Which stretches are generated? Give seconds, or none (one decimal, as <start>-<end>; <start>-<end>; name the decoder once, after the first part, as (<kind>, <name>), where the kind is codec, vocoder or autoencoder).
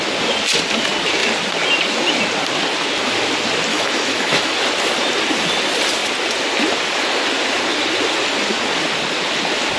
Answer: 3.7-4.5 (autoencoder, DAC-VAE)